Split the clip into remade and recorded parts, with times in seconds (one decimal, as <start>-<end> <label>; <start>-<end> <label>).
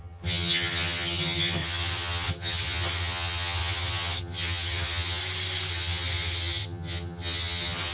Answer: 0.0-5.2 remade; 5.2-5.7 recorded; 5.7-7.9 remade